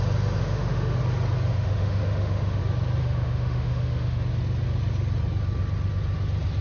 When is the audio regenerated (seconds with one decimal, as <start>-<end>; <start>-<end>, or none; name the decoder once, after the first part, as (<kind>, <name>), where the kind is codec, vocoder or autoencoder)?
0.4-1.0 (autoencoder, DAC-VAE); 1.5-2.6; 3.0-4.2